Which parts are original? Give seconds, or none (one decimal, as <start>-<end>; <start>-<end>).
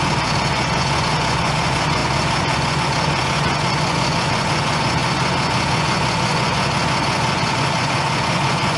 none